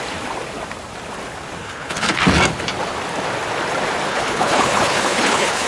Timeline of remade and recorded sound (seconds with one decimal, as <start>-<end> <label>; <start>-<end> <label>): 0.0-1.6 recorded; 1.6-2.2 remade; 2.2-4.1 recorded; 4.1-5.7 remade